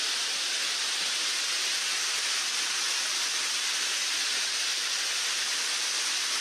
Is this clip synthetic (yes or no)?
no